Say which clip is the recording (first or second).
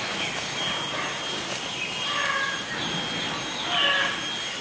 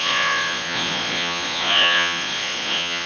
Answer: first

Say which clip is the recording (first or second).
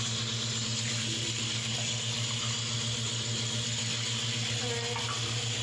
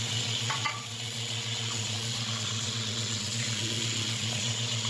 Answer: first